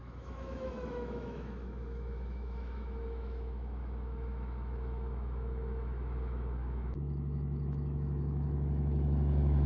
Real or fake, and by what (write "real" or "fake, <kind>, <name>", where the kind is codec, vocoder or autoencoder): fake, autoencoder, DAC-VAE